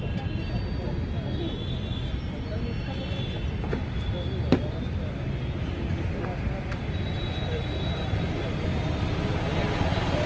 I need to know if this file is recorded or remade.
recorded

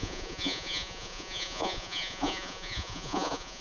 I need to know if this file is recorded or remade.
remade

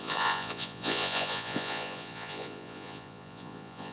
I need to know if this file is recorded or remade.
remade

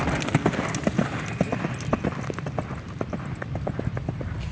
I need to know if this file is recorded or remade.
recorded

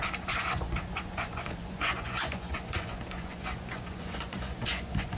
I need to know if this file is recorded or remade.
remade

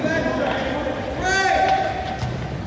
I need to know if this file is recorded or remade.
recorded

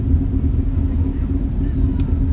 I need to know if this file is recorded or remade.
recorded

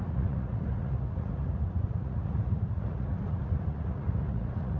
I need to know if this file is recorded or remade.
remade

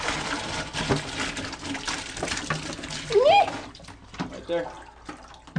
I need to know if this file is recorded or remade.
recorded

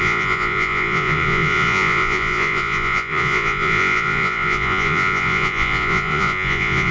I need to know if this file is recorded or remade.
remade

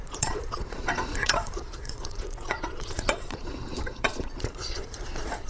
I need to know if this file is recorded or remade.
remade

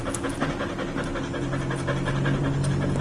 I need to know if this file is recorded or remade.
recorded